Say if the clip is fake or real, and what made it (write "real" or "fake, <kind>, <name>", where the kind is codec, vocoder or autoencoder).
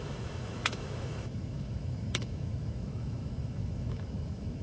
fake, autoencoder, DAC-VAE